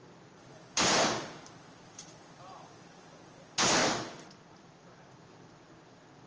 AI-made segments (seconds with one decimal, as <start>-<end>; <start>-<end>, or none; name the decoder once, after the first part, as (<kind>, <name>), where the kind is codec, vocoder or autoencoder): 0.5-3.2 (vocoder, BigVGAN v2); 3.8-5.1